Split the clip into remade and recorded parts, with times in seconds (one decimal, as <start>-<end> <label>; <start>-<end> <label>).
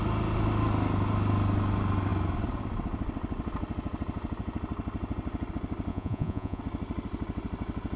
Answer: 0.0-5.9 recorded; 5.9-6.6 remade; 6.6-8.0 recorded